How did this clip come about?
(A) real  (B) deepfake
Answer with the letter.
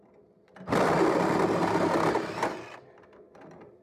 A